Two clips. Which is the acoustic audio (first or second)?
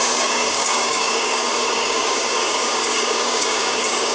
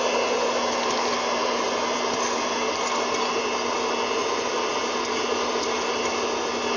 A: second